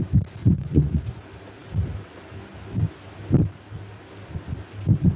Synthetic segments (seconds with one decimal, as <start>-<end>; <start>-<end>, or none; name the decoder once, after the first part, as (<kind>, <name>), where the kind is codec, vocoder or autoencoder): 0.4-1.2 (vocoder, Vocos)